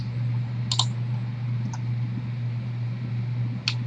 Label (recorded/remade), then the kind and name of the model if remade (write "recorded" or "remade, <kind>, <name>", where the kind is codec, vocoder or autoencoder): recorded